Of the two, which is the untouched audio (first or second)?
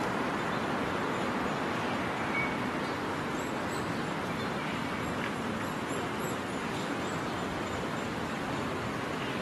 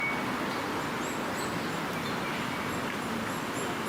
second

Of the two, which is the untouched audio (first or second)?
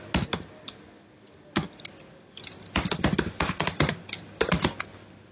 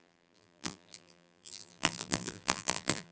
first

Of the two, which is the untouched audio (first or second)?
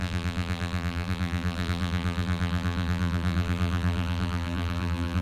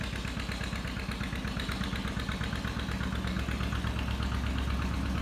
second